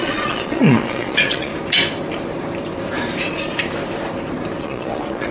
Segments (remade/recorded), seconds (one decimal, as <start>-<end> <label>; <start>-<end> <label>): 0.0-1.5 remade; 1.5-4.6 recorded; 4.6-5.3 remade